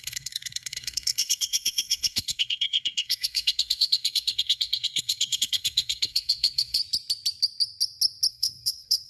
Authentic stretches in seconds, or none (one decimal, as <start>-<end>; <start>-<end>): 6.8-8.3